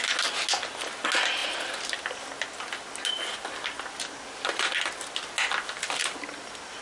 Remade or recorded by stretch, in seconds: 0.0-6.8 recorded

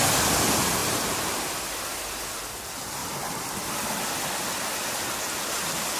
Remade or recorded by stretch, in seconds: 0.0-6.0 recorded